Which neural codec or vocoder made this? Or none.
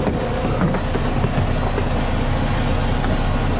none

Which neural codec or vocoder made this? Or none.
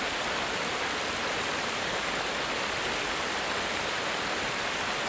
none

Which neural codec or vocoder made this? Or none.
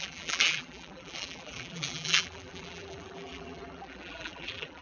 vocoder, BigVGAN v2